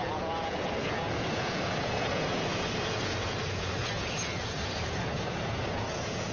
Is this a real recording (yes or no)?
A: no